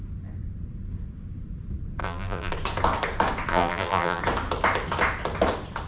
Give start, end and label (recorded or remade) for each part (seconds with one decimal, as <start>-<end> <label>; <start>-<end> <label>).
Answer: 0.0-2.0 recorded; 2.0-2.5 remade; 2.5-3.5 recorded; 3.5-4.2 remade; 4.2-5.9 recorded